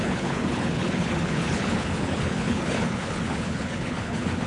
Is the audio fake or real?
fake